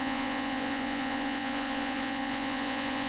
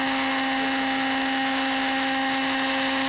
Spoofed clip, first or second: first